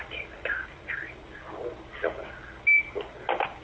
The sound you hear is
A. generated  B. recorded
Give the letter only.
B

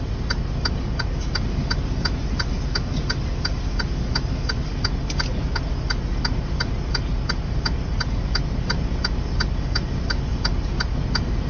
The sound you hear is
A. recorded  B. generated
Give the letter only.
A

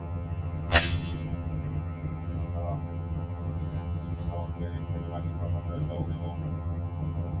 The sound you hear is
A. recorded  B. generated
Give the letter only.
B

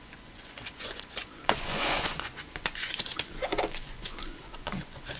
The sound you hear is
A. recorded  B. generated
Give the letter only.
B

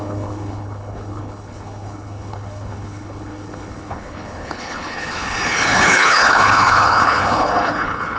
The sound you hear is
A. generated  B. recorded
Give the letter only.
A